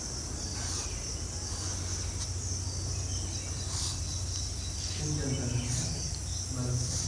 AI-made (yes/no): no